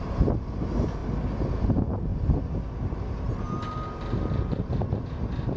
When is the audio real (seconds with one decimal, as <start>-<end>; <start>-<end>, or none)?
0.0-5.6